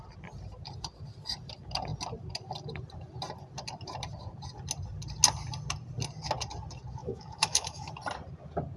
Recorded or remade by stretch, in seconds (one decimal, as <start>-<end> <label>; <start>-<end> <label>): 0.0-7.0 recorded; 7.0-7.9 remade; 7.9-8.8 recorded

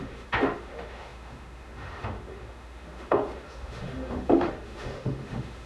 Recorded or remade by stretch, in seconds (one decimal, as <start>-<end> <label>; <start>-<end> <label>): 0.0-5.7 remade

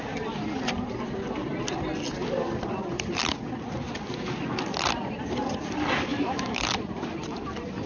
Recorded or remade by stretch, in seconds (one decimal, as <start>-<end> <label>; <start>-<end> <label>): 0.0-6.1 recorded; 6.1-6.6 remade; 6.6-7.9 recorded

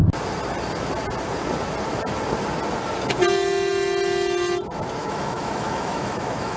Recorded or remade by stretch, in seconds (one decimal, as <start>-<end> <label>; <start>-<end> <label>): 0.0-5.0 recorded; 5.0-6.6 remade

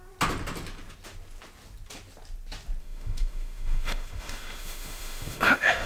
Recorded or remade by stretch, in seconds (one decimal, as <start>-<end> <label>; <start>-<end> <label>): 0.0-2.8 recorded; 2.8-5.9 remade